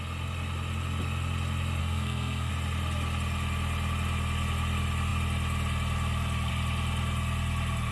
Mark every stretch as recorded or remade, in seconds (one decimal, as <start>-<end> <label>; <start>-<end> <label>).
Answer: 0.0-1.8 recorded; 1.8-2.5 remade; 2.5-7.9 recorded